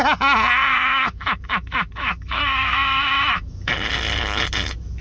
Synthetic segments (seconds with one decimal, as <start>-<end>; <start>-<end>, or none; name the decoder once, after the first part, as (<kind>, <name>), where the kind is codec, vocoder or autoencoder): 0.7-3.7 (autoencoder, DAC-VAE)

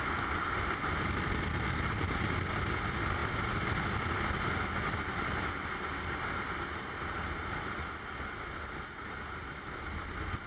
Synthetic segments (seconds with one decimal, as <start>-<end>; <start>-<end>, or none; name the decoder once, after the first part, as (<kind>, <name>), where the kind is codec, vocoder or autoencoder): none